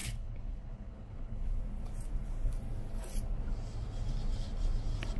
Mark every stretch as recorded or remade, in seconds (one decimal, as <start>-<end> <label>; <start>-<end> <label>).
0.0-1.6 remade; 1.6-5.2 recorded